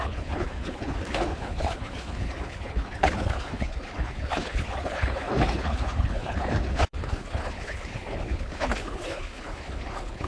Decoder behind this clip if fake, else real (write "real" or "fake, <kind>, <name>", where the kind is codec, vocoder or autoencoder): fake, codec, HILCodec